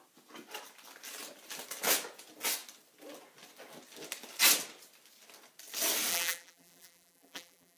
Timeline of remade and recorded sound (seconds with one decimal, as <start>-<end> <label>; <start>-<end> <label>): 0.0-6.1 recorded; 6.1-7.8 remade